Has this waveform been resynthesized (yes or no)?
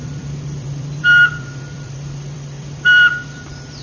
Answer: yes